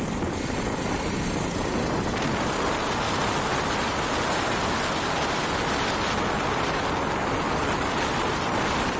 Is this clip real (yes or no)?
yes